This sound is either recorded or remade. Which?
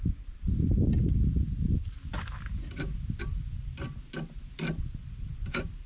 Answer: recorded